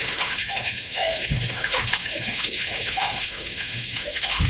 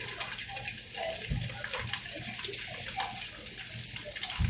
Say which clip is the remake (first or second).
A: first